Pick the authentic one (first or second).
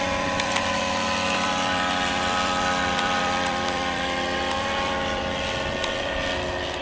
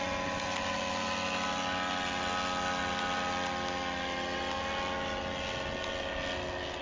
second